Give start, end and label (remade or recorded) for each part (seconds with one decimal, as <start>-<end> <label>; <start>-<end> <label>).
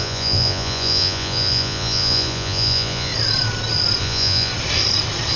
0.0-3.1 remade; 3.1-4.0 recorded; 4.0-4.5 remade; 4.5-5.4 recorded